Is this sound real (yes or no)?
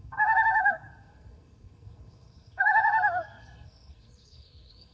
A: no